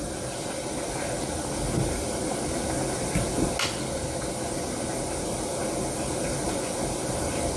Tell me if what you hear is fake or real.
real